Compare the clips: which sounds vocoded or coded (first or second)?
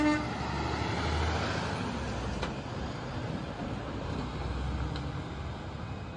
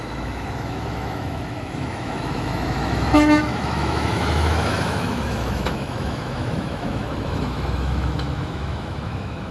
second